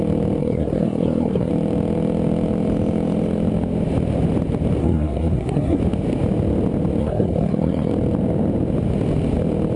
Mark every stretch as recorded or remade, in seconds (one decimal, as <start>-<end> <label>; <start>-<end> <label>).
0.0-0.4 recorded; 0.4-1.5 remade; 1.5-4.8 recorded; 4.8-5.8 remade; 5.8-7.0 recorded; 7.0-7.9 remade; 7.9-9.8 recorded